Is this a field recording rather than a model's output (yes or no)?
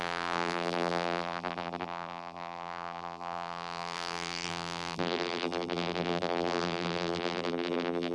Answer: no